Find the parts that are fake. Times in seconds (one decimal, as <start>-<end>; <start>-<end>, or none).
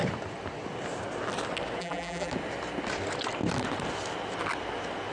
1.8-2.3